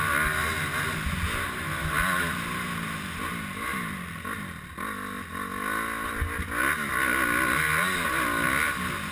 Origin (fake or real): real